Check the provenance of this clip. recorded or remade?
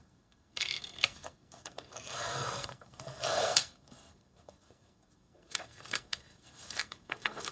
remade